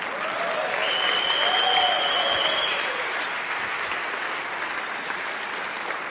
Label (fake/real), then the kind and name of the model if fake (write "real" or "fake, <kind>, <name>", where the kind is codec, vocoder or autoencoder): real